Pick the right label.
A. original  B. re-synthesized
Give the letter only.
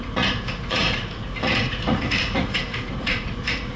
B